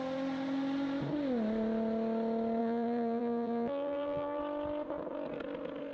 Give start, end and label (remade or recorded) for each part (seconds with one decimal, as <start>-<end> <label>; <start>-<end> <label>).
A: 0.0-2.6 recorded; 2.6-4.4 remade; 4.4-5.9 recorded